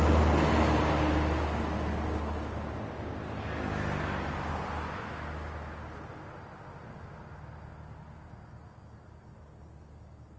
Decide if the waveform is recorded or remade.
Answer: recorded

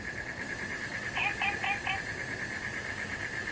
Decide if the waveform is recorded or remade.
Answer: recorded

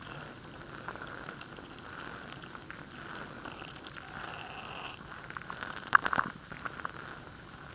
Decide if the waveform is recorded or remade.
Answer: recorded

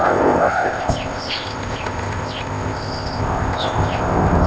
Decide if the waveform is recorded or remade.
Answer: remade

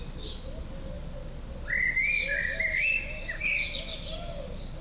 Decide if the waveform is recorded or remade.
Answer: recorded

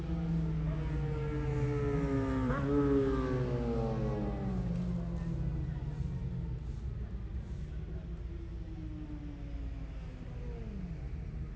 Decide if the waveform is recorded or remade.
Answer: recorded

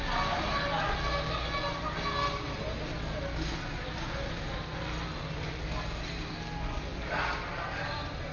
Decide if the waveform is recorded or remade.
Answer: recorded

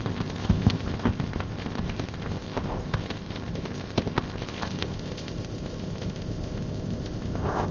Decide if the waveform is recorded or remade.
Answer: remade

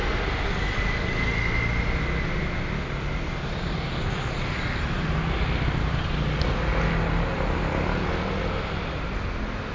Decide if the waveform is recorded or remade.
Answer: recorded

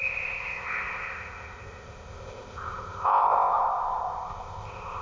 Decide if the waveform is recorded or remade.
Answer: remade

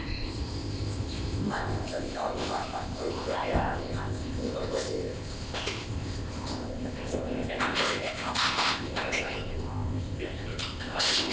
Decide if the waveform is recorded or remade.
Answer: remade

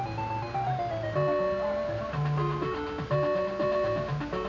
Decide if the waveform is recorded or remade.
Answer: recorded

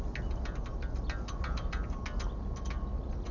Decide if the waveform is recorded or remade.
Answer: recorded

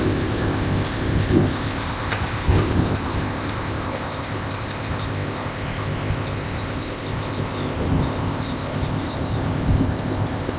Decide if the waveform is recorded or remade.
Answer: remade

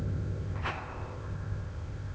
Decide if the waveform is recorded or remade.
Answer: remade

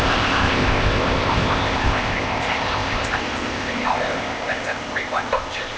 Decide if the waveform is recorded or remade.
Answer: remade